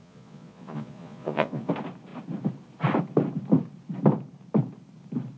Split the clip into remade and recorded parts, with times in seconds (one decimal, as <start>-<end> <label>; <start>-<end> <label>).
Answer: 0.0-1.7 remade; 1.7-5.4 recorded